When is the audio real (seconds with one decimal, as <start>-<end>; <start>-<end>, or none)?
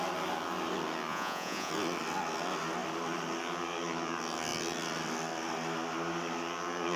0.0-1.1; 1.7-7.0